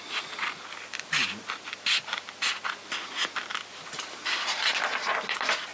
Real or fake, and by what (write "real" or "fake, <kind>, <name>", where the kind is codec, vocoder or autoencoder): real